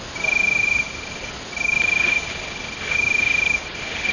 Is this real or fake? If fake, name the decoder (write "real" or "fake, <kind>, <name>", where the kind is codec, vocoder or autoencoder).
real